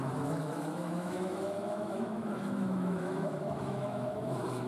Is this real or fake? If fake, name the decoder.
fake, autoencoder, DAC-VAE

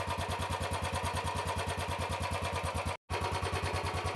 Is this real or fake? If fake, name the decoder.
real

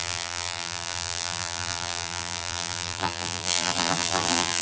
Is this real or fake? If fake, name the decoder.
fake, vocoder, BigVGAN v2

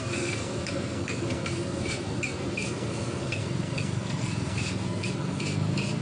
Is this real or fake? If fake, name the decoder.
fake, codec, SNAC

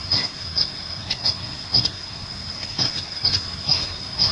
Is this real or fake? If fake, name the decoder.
fake, codec, SNAC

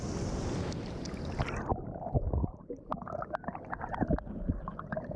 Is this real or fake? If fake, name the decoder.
real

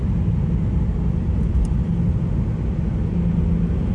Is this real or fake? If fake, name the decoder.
real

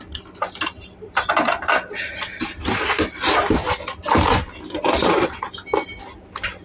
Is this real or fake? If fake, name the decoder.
real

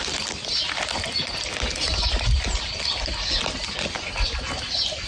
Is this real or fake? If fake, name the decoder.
real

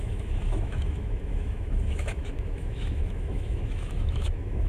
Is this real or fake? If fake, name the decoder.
fake, autoencoder, DAC-VAE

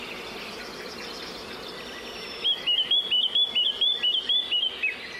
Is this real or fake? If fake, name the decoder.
real